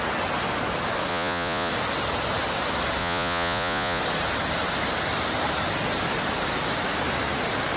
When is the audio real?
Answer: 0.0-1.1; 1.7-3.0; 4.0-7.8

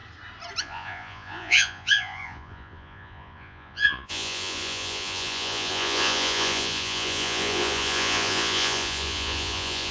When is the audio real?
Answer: 0.0-0.6

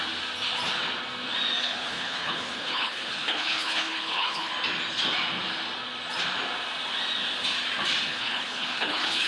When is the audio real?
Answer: 0.0-1.6; 4.5-8.1

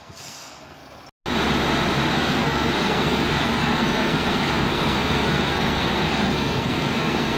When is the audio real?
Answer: 0.8-2.1

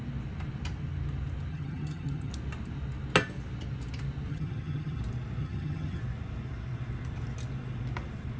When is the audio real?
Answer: 0.0-1.5; 2.3-4.3; 5.0-5.4; 6.0-8.4